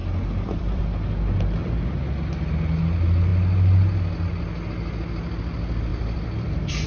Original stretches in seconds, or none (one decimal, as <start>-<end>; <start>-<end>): 0.8-5.9